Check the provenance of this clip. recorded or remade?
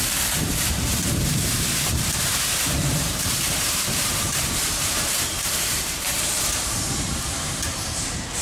remade